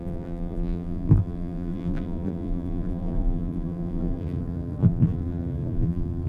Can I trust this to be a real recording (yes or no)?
no